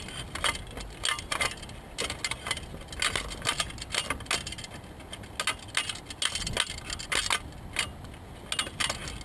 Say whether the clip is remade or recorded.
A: recorded